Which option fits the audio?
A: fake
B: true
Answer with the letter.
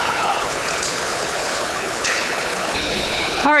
A